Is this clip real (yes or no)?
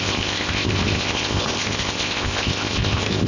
no